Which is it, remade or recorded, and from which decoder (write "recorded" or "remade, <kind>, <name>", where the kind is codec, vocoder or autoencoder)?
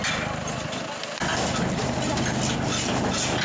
recorded